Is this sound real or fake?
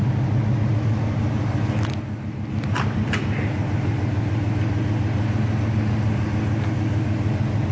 real